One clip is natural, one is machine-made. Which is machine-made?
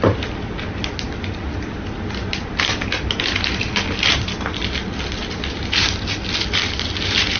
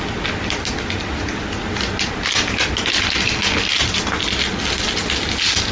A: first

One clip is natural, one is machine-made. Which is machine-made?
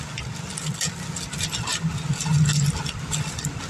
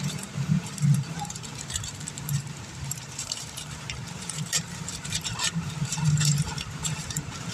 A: second